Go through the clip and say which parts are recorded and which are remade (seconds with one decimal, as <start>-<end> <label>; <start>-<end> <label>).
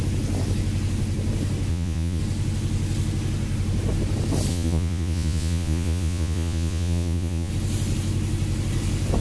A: 0.0-1.7 recorded; 1.7-2.2 remade; 2.2-4.5 recorded; 4.5-7.5 remade; 7.5-9.2 recorded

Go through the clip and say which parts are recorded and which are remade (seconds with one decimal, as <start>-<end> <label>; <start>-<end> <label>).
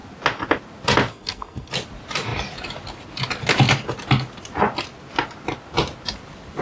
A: 0.0-1.1 recorded; 1.1-1.7 remade; 1.7-6.6 recorded